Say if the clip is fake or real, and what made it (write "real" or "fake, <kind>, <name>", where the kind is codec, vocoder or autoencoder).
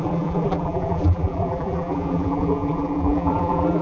fake, vocoder, BigVGAN v2